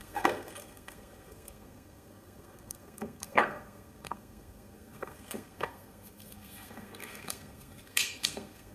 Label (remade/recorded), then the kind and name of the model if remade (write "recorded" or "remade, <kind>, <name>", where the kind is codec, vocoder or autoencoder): remade, codec, SNAC